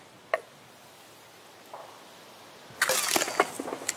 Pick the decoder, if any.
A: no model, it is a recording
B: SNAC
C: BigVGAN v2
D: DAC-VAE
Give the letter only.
A